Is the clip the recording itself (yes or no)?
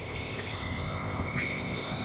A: no